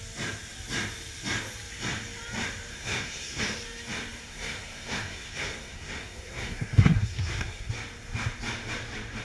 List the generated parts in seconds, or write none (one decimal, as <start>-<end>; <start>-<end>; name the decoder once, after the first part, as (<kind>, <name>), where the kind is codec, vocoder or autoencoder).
2.7-3.4 (codec, SNAC); 4.2-7.7